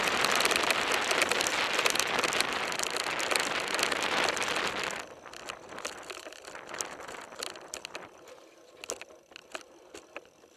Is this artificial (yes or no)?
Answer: no